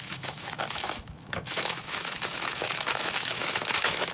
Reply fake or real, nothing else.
fake